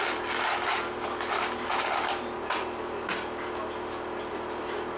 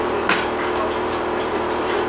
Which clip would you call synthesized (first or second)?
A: second